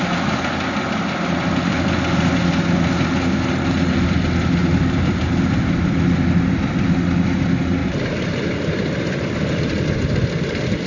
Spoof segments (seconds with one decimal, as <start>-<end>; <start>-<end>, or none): 4.6-6.0; 7.8-9.8